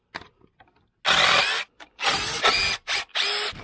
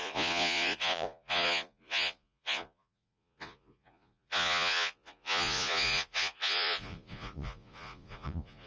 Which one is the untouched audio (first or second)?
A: first